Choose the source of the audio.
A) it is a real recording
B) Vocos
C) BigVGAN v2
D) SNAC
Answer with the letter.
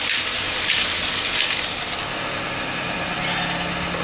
A